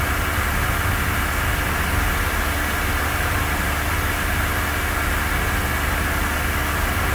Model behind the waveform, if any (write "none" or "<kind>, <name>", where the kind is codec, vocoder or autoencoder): none